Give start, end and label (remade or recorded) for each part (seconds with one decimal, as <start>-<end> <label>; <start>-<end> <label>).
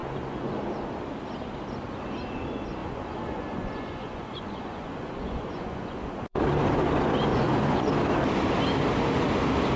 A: 0.0-0.6 remade; 0.6-2.8 recorded; 2.8-6.4 remade; 6.4-7.3 recorded; 7.3-7.9 remade; 7.9-9.8 recorded